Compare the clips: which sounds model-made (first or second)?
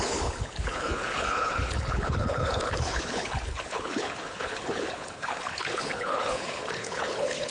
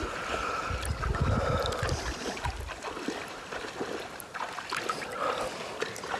first